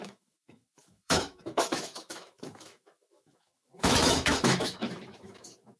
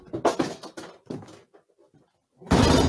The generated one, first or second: first